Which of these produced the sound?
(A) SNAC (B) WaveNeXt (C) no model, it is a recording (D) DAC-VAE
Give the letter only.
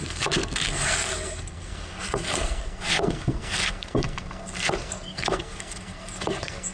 A